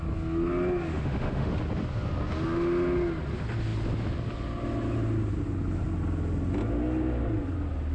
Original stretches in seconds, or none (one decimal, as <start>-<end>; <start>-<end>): 0.0-0.9; 1.5-7.9